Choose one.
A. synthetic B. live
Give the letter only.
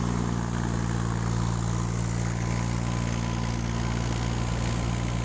B